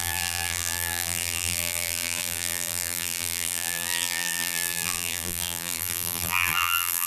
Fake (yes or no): yes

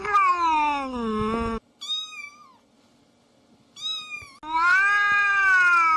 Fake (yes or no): no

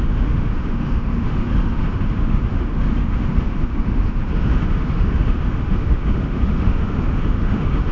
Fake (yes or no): yes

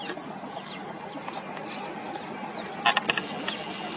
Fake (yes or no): no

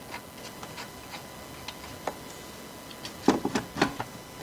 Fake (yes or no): no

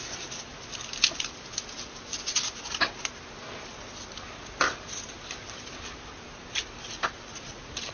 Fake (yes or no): no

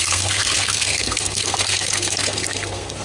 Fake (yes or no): yes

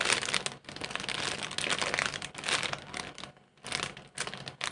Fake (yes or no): no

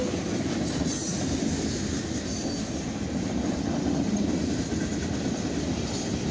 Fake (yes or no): no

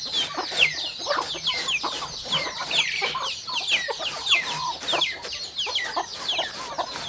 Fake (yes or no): no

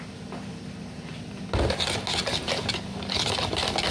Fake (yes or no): no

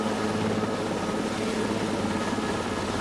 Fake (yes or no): no